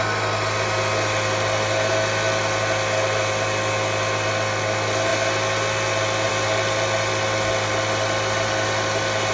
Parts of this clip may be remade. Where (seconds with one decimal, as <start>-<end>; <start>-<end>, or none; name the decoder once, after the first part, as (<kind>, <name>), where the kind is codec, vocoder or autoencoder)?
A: none